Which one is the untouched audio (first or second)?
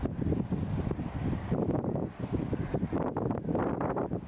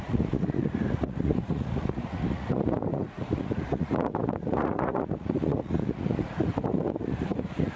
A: first